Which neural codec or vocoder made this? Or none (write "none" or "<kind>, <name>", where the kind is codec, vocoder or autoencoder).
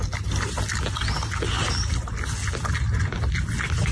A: none